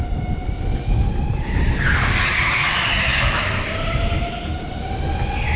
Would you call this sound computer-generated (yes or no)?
no